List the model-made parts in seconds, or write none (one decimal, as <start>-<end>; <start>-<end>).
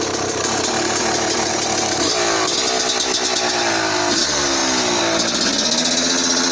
none